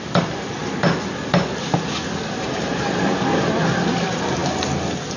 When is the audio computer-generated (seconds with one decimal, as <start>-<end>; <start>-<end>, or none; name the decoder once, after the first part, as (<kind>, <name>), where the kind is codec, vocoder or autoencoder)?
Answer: 0.0-0.6 (vocoder, BigVGAN v2); 3.7-4.4